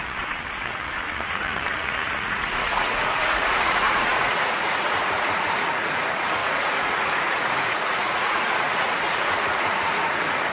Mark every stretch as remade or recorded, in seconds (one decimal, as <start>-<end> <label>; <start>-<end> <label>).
0.0-10.5 remade